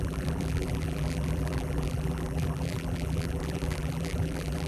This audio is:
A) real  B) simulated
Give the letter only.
B